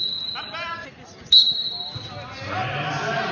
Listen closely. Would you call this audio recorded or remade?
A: recorded